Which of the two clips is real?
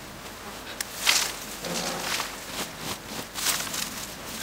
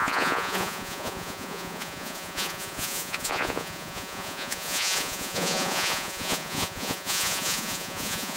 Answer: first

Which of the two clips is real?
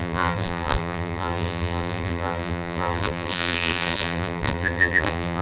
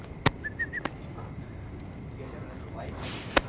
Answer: second